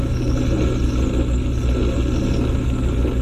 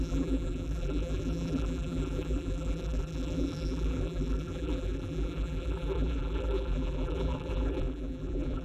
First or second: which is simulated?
second